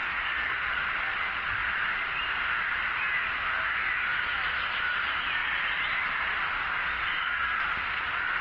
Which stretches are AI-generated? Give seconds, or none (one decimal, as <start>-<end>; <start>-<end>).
0.0-0.7